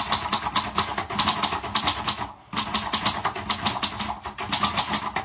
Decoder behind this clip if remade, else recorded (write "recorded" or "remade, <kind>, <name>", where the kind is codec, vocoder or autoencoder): recorded